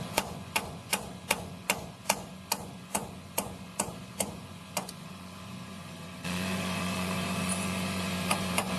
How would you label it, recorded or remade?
remade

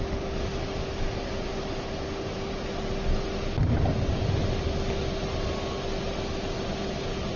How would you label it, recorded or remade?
recorded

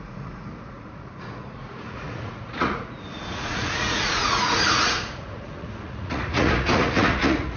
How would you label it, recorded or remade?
remade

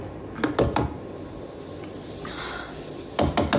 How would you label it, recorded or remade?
recorded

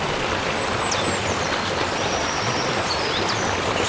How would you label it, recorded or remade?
recorded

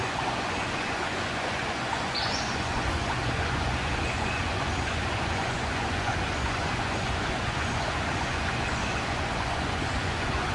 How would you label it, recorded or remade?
remade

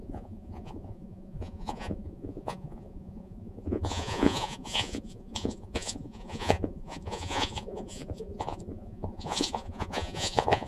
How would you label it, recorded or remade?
remade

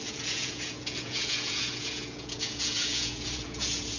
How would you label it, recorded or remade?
remade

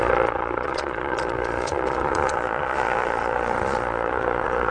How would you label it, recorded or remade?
remade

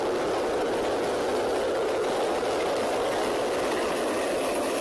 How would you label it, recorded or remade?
recorded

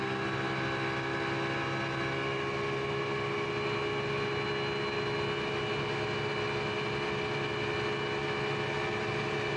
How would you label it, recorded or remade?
recorded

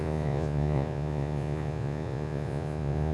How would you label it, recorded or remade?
remade